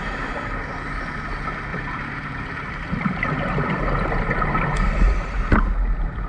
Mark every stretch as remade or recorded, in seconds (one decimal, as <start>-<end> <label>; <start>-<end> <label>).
0.0-1.7 recorded; 1.7-5.5 remade; 5.5-6.3 recorded